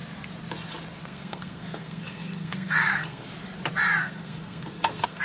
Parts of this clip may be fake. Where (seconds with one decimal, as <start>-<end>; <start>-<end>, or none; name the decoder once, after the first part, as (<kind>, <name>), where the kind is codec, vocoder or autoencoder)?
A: 1.0-3.3 (codec, SNAC); 4.0-5.2